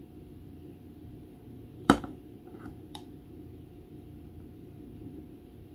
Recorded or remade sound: remade